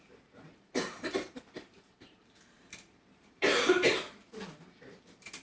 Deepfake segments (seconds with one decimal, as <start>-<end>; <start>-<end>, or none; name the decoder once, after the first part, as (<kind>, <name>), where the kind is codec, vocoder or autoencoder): 0.0-3.9 (vocoder, BigVGAN v2); 4.6-5.4